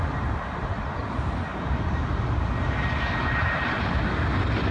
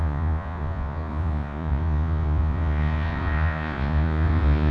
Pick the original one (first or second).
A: first